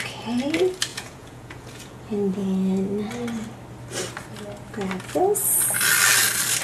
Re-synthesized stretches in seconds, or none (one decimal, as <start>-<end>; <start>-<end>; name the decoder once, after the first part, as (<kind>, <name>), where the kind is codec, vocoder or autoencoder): 0.9-2.0 (vocoder, Vocos)